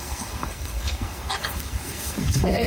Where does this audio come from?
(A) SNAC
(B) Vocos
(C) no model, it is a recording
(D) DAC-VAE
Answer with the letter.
A